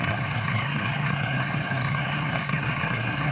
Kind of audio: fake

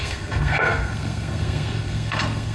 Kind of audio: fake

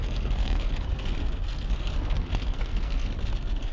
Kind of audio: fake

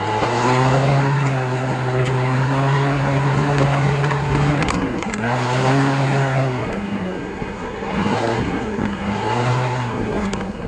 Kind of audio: fake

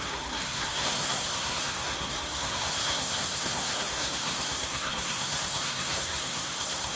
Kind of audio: fake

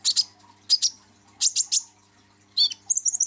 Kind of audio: real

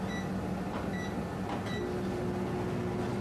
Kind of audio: real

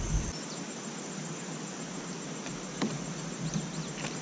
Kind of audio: real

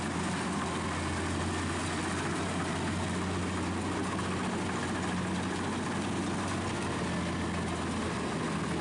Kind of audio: real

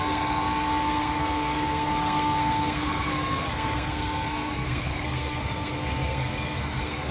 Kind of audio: fake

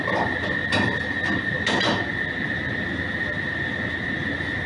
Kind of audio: real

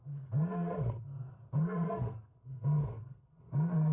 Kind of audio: fake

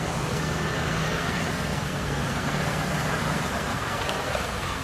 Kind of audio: fake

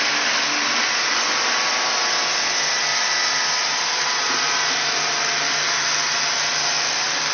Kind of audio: real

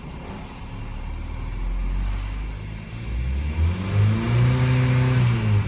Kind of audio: real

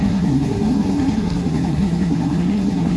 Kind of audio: fake